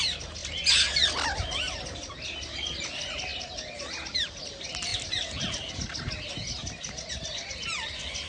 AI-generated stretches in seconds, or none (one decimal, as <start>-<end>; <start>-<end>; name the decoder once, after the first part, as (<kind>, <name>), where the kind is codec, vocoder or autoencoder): none